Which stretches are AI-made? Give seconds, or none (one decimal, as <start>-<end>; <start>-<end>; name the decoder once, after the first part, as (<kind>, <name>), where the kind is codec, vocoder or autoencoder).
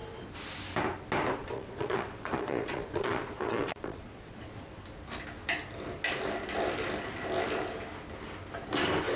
1.4-4.8 (vocoder, Vocos)